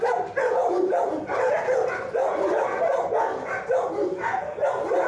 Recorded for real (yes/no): yes